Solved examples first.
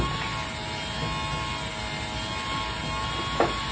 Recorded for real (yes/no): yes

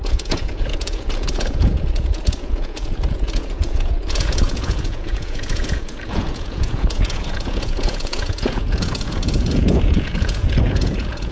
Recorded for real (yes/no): no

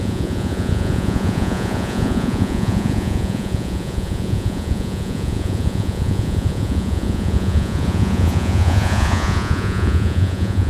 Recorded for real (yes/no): no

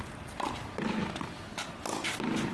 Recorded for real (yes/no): yes